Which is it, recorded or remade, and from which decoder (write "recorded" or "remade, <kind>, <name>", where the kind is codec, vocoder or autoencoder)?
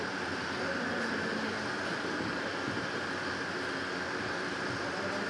remade, vocoder, BigVGAN v2